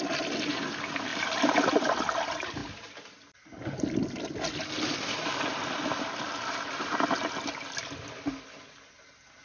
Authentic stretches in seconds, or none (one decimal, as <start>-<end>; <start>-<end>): 0.0-1.1; 1.7-9.4